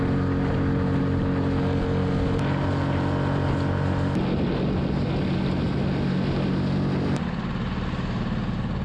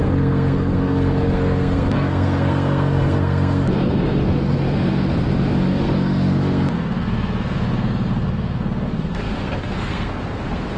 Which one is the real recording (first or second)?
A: first